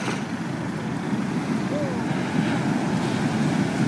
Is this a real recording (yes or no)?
yes